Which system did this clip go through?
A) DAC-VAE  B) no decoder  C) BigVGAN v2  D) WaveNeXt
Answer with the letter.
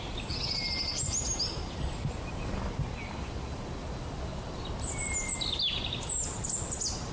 B